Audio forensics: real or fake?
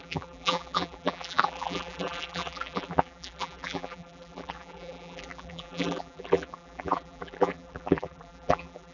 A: fake